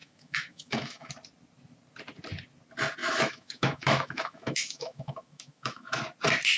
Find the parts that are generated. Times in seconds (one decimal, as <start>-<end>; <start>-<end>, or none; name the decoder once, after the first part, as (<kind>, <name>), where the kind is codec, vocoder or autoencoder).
0.0-1.1 (autoencoder, DAC-VAE); 3.0-6.0